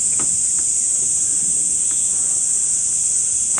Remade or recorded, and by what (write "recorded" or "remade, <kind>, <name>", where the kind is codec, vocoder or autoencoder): recorded